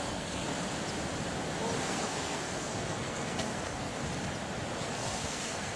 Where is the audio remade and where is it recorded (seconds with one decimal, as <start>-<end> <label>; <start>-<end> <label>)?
0.0-0.5 remade; 0.5-1.8 recorded; 1.8-3.9 remade; 3.9-4.8 recorded; 4.8-5.8 remade